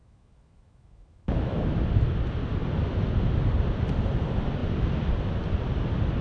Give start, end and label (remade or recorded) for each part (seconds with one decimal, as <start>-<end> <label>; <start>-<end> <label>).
0.0-1.8 remade; 1.8-6.2 recorded